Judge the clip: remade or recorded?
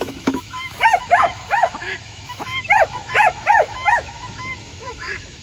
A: remade